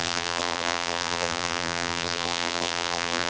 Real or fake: fake